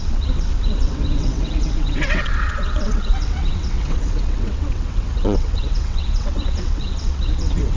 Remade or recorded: remade